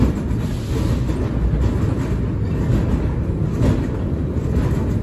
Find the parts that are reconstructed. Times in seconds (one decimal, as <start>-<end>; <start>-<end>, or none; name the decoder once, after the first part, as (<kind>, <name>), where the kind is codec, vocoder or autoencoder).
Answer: none